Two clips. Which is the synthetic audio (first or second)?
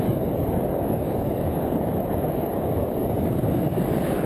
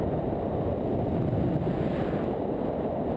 first